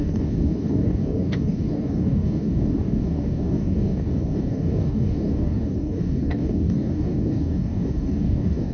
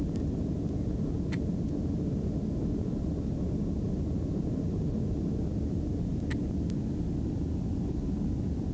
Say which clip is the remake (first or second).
first